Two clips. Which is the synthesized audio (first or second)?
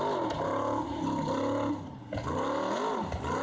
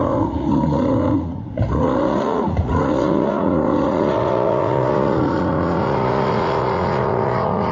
second